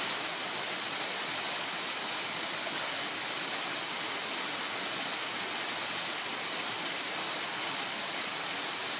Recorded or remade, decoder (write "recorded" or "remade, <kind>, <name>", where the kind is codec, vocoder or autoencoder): recorded